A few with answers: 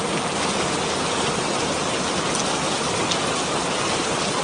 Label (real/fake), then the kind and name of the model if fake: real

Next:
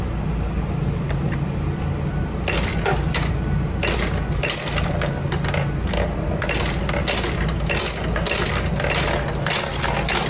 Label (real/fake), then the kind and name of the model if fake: real